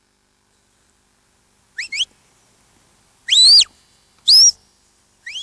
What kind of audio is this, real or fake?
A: real